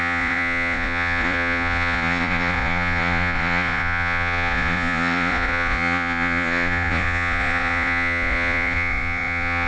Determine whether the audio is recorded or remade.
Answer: remade